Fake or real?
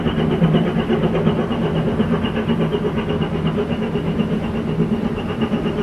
real